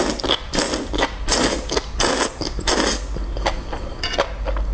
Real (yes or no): yes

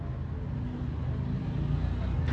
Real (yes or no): yes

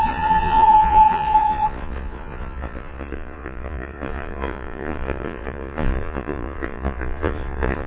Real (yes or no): no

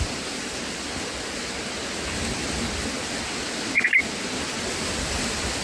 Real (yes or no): yes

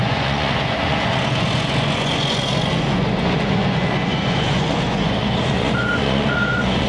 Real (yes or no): no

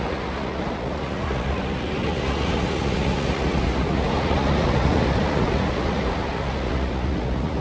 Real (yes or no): no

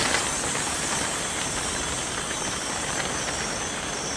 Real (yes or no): yes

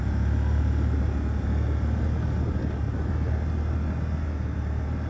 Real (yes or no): yes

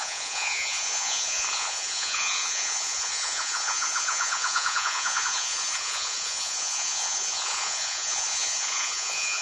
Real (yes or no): no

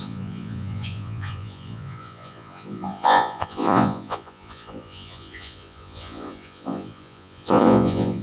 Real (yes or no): no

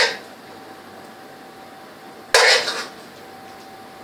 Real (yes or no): yes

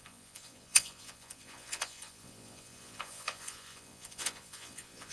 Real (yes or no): no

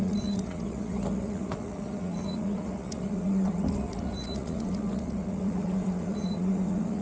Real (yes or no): no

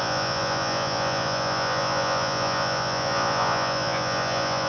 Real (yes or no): no